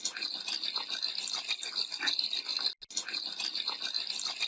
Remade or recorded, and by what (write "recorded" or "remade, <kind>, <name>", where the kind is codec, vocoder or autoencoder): recorded